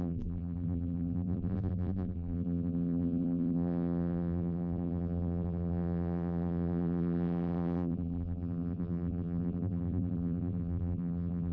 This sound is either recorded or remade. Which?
remade